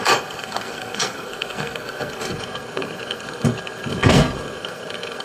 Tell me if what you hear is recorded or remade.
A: remade